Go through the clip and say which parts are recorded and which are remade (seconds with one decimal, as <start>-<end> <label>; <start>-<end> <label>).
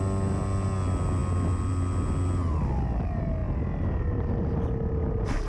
0.0-5.5 recorded